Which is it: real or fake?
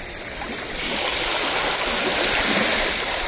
real